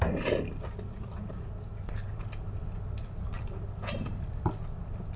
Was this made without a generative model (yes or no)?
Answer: yes